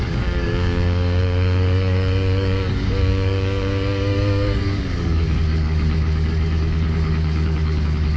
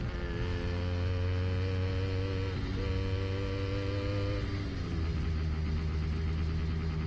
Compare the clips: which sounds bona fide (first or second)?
second